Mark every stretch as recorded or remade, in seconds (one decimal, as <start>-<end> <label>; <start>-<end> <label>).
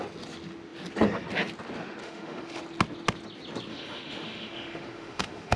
0.0-2.0 recorded; 2.0-2.6 remade; 2.6-3.7 recorded; 3.7-5.6 remade